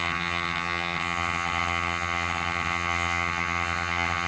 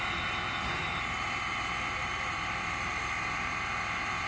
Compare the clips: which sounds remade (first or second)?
first